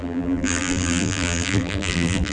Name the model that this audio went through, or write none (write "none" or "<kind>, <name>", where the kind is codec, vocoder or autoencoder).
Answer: vocoder, BigVGAN v2